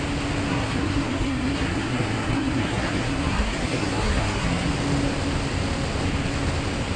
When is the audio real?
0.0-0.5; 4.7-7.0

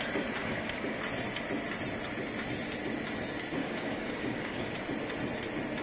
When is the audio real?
0.0-0.4; 1.0-3.6; 4.7-5.8